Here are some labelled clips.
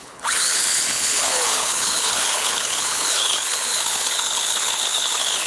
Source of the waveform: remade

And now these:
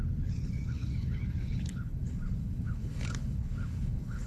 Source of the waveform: remade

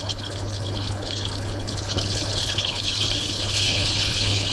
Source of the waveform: remade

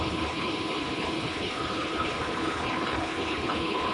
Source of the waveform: remade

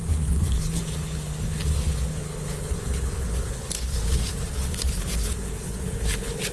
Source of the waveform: remade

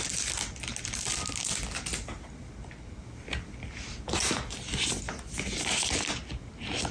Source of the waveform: recorded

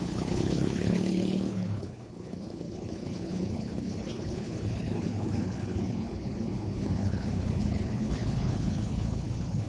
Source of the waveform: remade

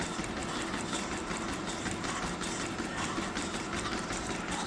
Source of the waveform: recorded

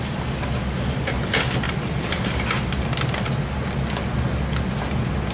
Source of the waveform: recorded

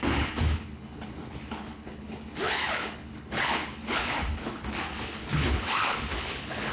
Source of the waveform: remade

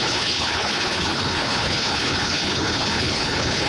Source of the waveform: remade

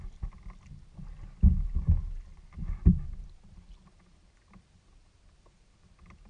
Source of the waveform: recorded